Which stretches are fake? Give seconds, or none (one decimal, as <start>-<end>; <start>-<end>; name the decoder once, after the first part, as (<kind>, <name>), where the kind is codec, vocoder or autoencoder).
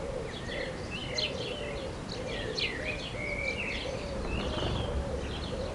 none